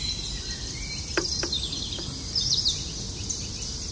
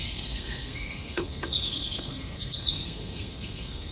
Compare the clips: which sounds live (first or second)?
first